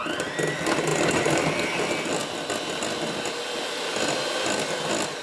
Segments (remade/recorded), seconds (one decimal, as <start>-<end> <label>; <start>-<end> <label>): 0.0-0.9 recorded; 0.9-1.4 remade; 1.4-5.2 recorded